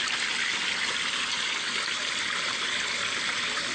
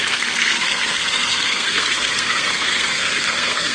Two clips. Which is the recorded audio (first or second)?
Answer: first